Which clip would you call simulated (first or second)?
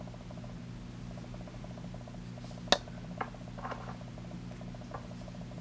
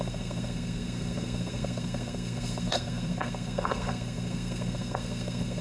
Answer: second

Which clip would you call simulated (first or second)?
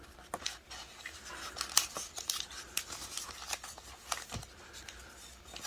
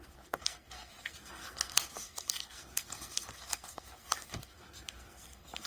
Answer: second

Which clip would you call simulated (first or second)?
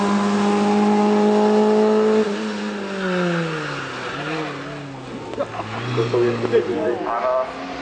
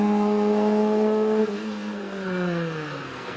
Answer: second